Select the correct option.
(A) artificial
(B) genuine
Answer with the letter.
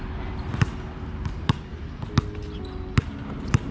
B